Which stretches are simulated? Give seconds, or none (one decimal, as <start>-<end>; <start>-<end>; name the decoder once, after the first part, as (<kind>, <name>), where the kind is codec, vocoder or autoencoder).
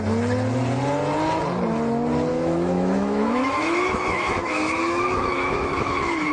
2.3-6.3 (autoencoder, DAC-VAE)